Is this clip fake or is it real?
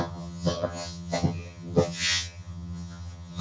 fake